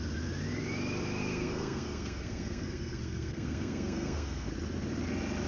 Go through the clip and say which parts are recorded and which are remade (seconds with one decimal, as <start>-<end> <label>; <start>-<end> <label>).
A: 0.0-1.2 recorded; 1.2-4.5 remade; 4.5-5.5 recorded